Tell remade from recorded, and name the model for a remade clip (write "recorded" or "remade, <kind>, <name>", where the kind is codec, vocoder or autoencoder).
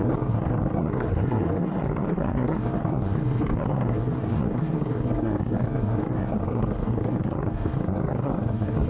remade, codec, SNAC